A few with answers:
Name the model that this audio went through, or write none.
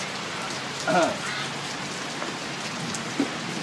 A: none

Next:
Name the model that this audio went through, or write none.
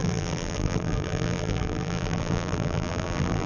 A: vocoder, BigVGAN v2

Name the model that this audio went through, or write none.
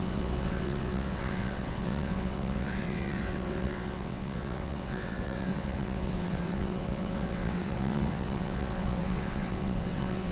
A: vocoder, WaveNeXt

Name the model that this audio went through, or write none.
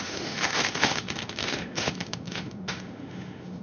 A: autoencoder, DAC-VAE